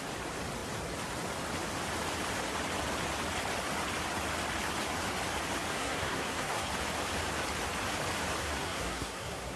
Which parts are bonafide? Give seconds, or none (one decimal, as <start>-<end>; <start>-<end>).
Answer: 0.0-5.7; 6.7-8.4